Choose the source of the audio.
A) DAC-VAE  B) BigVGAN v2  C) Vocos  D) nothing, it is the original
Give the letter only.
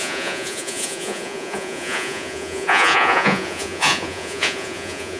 C